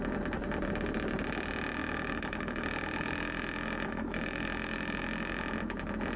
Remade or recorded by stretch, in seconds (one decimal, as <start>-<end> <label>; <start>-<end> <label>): 0.0-1.8 recorded; 1.8-5.5 remade; 5.5-6.2 recorded